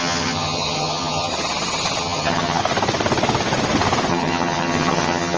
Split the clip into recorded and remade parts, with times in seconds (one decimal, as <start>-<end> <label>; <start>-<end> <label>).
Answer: 0.0-1.3 remade; 1.3-2.0 recorded; 2.0-2.6 remade; 2.6-4.1 recorded; 4.1-5.4 remade